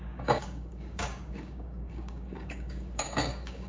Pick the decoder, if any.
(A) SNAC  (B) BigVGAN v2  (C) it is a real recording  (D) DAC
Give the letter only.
D